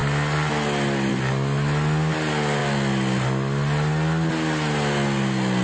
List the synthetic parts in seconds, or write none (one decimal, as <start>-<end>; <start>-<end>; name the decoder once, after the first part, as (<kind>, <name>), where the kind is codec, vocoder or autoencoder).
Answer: none